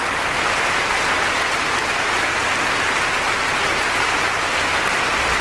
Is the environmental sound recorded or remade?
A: recorded